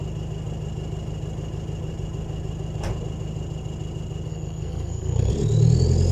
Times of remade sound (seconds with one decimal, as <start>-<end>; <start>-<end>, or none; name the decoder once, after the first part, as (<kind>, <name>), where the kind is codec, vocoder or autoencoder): 4.3-5.3 (codec, SNAC)